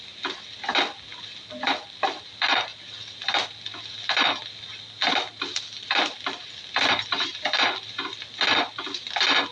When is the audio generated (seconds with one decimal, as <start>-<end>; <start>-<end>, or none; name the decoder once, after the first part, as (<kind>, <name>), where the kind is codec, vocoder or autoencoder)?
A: 1.1-2.0 (vocoder, BigVGAN v2); 2.7-7.4